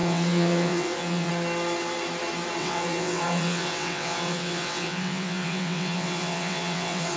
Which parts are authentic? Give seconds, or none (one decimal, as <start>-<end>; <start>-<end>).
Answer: 1.3-2.6